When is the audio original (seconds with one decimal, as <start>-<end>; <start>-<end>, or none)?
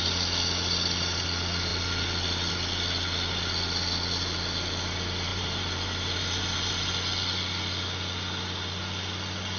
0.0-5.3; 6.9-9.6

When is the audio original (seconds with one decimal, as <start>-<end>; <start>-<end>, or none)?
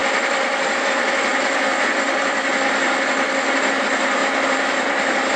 2.6-4.2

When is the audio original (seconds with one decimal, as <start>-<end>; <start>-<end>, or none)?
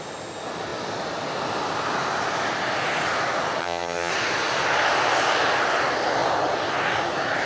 0.0-3.6; 4.1-7.5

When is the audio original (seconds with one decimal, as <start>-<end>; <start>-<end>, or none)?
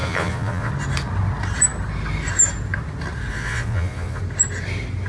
0.7-3.3; 4.2-5.1